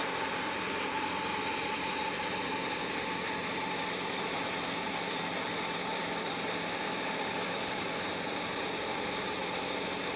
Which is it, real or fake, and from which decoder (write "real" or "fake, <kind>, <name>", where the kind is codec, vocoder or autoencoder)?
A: fake, vocoder, BigVGAN v2